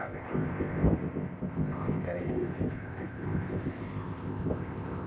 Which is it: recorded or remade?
remade